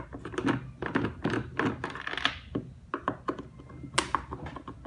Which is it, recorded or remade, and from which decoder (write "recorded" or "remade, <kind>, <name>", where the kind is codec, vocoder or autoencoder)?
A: recorded